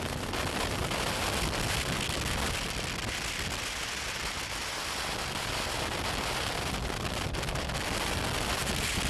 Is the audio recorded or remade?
recorded